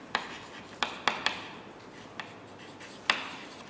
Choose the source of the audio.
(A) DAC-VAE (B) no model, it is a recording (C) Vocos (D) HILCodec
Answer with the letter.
B